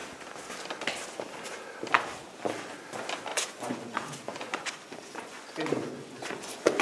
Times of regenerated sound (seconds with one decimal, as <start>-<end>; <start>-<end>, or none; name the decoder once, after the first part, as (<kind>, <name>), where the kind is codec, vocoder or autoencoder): 3.3-6.8 (vocoder, Vocos)